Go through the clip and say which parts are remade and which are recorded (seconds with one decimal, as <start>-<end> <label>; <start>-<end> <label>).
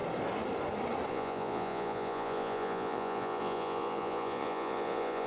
0.0-1.1 recorded; 1.1-5.3 remade